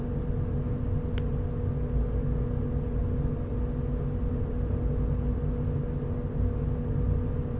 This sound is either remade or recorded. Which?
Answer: recorded